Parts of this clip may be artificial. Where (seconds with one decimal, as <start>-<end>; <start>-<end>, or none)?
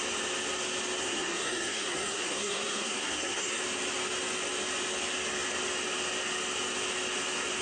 1.0-3.6